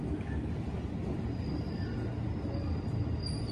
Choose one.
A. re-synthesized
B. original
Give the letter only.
B